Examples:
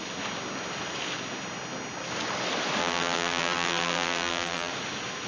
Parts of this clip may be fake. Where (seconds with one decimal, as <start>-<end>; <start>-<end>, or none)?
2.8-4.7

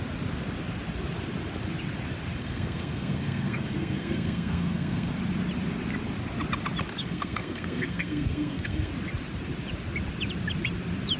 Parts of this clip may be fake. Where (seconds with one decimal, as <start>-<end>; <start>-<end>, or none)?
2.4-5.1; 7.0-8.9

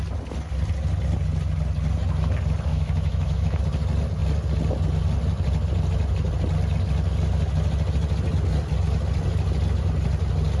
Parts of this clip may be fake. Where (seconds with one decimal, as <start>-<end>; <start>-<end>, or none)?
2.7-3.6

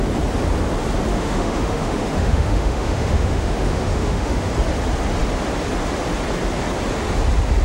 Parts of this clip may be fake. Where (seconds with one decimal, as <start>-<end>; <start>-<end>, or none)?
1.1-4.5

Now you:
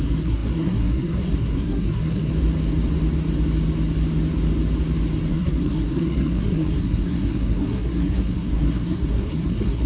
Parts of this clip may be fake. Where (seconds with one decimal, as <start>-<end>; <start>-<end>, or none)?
0.0-2.3; 5.3-9.9

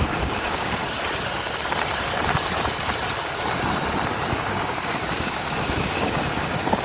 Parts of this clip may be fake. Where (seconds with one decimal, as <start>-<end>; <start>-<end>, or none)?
0.0-0.8; 4.3-6.8

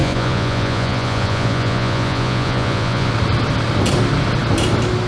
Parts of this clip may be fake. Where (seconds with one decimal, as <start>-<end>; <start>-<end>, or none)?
0.0-3.1

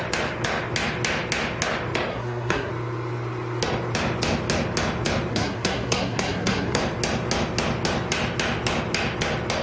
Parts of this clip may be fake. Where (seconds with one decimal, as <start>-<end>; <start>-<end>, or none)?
2.1-2.7; 5.3-6.8